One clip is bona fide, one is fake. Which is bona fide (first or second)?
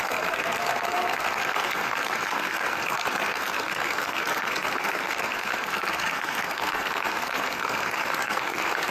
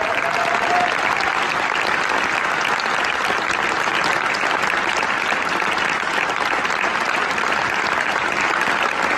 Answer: second